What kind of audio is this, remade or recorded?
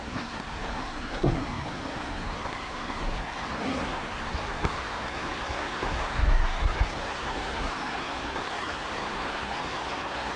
remade